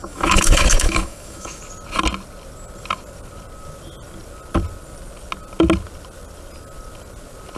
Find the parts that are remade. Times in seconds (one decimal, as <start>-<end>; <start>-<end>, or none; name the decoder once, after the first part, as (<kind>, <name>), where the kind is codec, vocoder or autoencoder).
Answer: 0.0-1.6 (autoencoder, DAC-VAE)